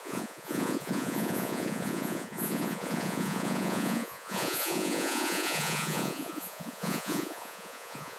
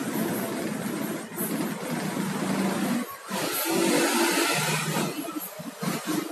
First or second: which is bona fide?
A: second